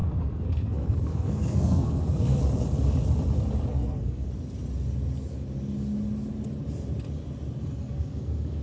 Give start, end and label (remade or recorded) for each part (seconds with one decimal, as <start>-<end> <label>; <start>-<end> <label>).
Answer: 0.0-2.4 remade; 2.4-3.7 recorded; 3.7-4.3 remade; 4.3-7.8 recorded; 7.8-8.6 remade